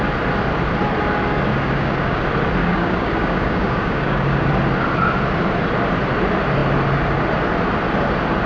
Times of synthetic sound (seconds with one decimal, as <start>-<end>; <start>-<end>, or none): 1.5-2.2; 2.6-4.5